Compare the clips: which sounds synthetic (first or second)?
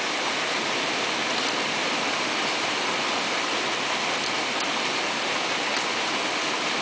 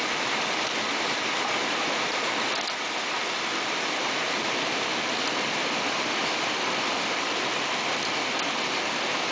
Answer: second